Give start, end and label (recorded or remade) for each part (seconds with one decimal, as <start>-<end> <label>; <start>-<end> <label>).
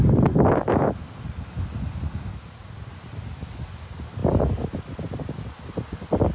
0.0-2.3 recorded; 2.3-2.9 remade; 2.9-6.3 recorded